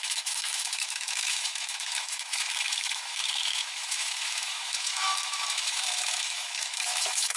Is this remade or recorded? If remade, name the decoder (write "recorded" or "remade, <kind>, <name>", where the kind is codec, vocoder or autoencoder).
remade, autoencoder, DAC-VAE